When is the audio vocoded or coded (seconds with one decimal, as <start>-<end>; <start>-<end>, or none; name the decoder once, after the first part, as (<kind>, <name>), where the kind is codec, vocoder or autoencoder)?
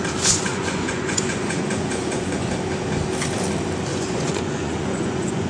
0.5-2.5 (vocoder, Vocos); 3.9-5.5